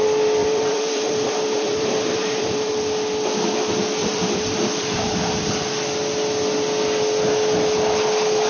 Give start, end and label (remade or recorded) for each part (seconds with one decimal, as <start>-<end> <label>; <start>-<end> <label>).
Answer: 0.0-0.4 recorded; 0.4-2.7 remade; 2.7-4.0 recorded; 4.0-5.0 remade; 5.0-8.5 recorded